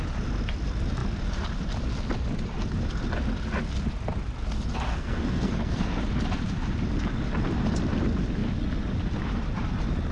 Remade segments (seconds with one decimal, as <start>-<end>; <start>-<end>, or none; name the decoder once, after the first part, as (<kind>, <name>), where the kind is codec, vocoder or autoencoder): 4.9-6.0 (codec, SNAC)